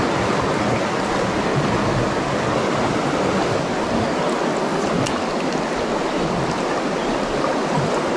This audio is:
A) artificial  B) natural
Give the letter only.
B